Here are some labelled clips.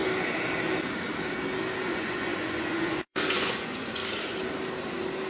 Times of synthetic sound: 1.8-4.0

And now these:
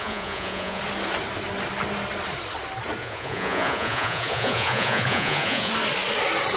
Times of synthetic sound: 0.0-0.8; 3.0-5.7

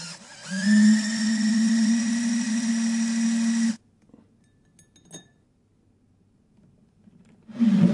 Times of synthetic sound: 0.4-2.7

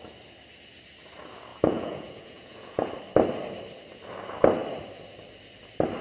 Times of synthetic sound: 1.5-2.9

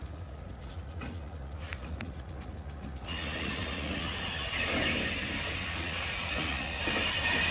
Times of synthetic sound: 0.0-4.5; 5.6-6.8

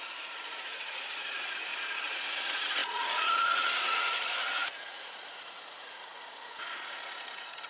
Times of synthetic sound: 0.0-1.7; 2.2-7.7

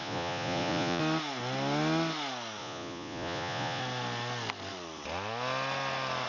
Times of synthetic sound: 0.0-1.0; 2.6-3.8

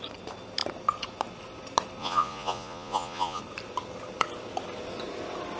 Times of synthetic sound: 2.0-3.4